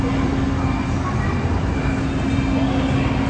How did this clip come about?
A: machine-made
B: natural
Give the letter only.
B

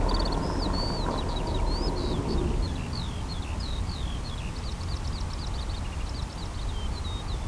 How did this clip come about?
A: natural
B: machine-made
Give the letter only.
A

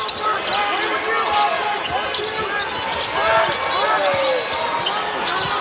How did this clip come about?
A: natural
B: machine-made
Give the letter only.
A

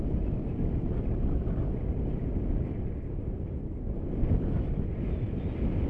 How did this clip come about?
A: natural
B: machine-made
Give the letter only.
A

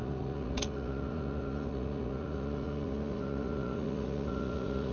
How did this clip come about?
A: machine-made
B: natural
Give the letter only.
A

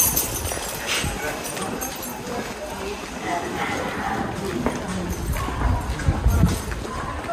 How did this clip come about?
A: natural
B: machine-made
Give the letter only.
A